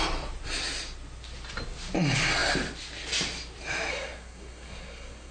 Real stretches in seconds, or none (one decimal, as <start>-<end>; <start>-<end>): 0.0-3.9